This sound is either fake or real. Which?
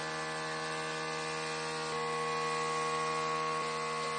real